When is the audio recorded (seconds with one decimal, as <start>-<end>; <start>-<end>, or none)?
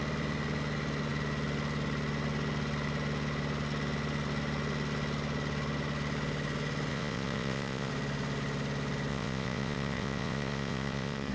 0.0-6.9; 7.9-9.1